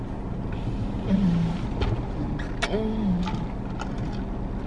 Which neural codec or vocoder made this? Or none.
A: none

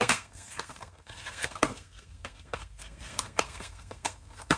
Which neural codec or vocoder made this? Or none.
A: codec, SNAC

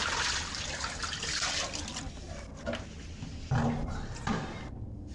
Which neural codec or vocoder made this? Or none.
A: none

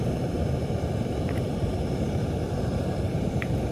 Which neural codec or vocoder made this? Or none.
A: vocoder, BigVGAN v2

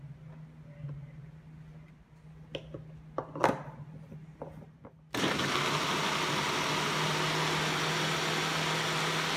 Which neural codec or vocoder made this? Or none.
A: none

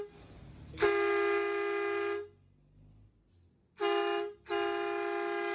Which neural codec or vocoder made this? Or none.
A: none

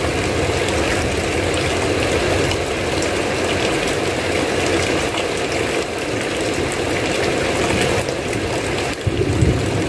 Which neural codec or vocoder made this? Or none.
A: none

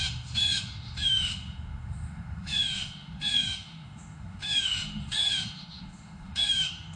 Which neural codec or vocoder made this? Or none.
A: autoencoder, DAC-VAE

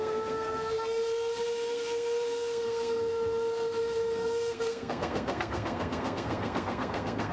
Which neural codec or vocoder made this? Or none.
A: codec, SNAC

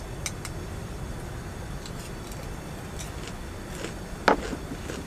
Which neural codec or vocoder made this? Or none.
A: none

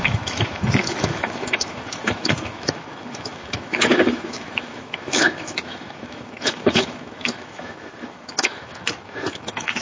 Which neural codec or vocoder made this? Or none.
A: autoencoder, DAC-VAE